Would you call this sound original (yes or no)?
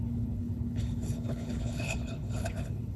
no